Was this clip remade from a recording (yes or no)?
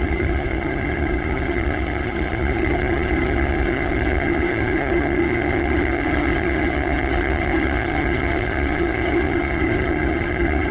yes